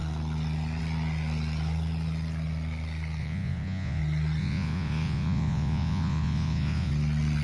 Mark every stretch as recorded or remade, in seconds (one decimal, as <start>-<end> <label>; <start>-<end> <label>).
0.0-3.2 recorded; 3.2-4.0 remade; 4.0-4.4 recorded; 4.4-6.9 remade; 6.9-7.4 recorded